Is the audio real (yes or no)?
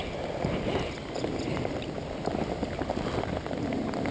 yes